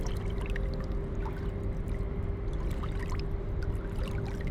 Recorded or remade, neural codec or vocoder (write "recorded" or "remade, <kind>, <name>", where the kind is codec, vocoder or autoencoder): recorded